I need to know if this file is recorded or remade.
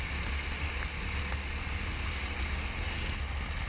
recorded